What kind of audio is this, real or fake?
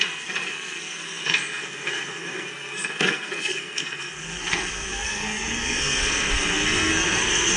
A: fake